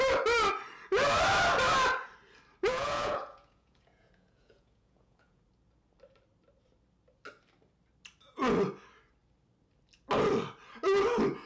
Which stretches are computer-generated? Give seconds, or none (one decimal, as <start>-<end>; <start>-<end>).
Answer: 2.7-5.4